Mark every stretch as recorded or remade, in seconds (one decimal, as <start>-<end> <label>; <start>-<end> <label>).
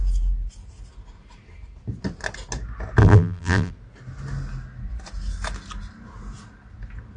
0.0-3.0 recorded; 3.0-3.7 remade; 3.7-7.2 recorded